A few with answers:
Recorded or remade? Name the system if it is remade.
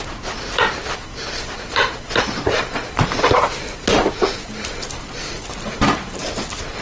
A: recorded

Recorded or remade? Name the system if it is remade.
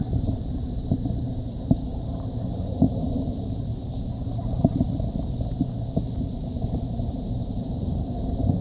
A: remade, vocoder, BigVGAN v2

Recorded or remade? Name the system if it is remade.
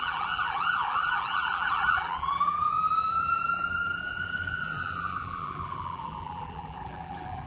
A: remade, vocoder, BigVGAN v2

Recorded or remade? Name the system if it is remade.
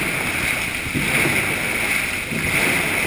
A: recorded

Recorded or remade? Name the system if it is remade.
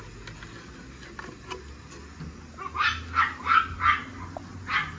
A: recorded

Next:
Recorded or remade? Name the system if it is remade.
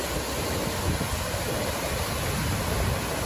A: recorded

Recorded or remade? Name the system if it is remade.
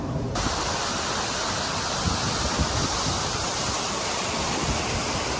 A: recorded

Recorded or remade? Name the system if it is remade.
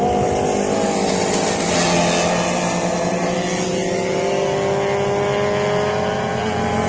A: recorded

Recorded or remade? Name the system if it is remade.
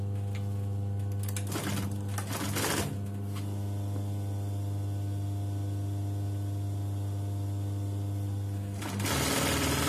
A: recorded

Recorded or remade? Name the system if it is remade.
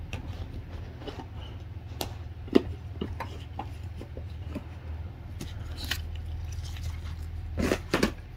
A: recorded